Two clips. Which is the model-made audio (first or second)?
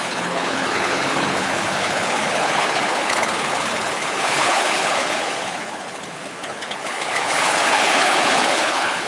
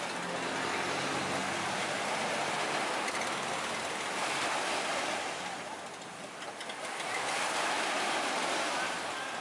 first